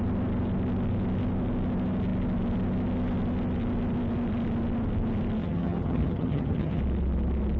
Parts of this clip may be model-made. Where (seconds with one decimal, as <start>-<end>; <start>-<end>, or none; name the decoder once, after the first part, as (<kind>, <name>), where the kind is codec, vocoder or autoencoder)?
5.4-6.8 (vocoder, HiFi-GAN)